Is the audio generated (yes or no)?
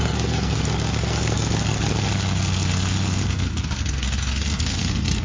yes